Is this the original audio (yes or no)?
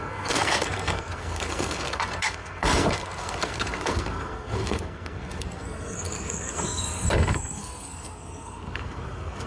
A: no